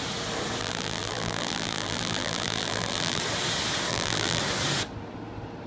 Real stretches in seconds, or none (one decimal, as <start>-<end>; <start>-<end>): 0.0-0.6; 3.2-3.9; 4.4-5.7